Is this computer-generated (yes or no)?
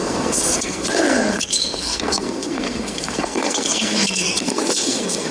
yes